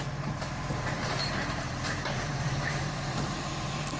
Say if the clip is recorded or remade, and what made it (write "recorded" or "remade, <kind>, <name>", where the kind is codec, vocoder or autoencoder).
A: remade, vocoder, BigVGAN v2